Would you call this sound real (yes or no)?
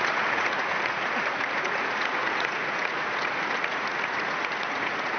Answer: no